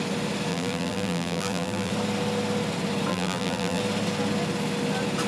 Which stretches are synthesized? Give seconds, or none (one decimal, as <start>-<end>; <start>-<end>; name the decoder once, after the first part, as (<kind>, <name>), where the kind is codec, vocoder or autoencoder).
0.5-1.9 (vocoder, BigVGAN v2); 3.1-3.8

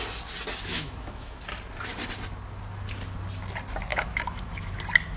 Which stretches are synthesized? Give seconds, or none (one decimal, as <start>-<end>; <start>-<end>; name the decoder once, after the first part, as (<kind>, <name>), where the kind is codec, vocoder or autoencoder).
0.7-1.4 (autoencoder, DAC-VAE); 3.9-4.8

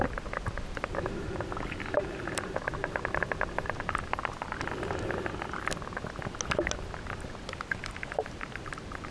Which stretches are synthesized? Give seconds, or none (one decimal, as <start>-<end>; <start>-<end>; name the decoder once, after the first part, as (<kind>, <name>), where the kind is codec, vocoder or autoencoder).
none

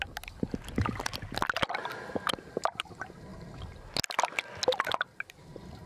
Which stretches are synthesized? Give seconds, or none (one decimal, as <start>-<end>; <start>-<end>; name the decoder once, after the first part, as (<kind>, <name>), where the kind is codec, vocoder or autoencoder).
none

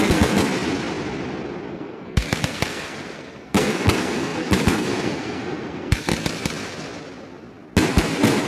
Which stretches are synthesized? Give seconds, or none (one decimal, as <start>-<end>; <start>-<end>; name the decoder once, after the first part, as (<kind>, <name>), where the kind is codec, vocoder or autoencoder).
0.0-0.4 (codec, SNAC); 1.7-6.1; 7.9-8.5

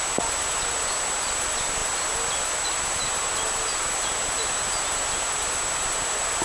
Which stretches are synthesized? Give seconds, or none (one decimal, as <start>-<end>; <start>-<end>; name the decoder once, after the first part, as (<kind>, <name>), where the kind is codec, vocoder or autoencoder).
none

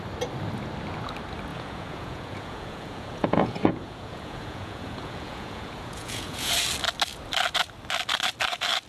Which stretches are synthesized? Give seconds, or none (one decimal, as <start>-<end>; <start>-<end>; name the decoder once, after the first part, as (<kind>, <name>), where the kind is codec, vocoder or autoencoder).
1.5-6.5 (vocoder, Vocos)